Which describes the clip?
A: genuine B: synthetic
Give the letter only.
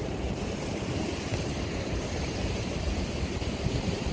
B